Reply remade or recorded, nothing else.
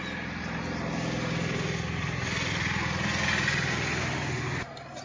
recorded